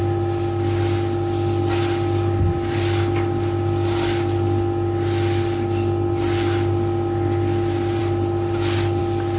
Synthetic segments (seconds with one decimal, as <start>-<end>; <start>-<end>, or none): none